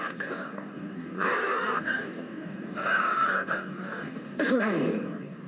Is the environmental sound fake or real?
fake